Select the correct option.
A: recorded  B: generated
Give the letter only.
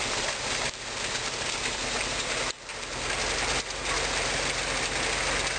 A